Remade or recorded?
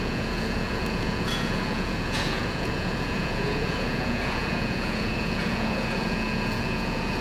remade